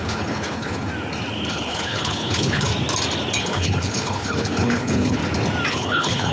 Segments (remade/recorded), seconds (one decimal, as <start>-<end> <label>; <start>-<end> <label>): 0.0-0.9 remade; 0.9-1.5 recorded; 1.5-2.7 remade; 2.7-3.4 recorded; 3.4-5.2 remade; 5.2-5.7 recorded; 5.7-6.3 remade